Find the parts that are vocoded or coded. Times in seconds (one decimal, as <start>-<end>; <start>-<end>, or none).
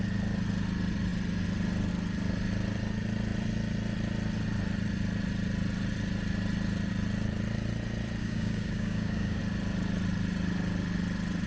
8.2-9.4